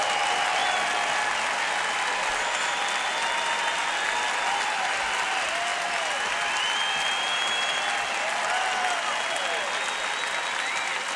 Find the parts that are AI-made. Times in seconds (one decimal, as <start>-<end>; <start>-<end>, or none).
none